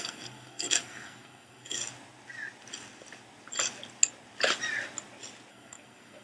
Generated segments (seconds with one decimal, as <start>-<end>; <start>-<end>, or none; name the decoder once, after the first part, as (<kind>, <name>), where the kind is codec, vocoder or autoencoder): 0.0-1.8 (codec, SNAC); 5.5-6.2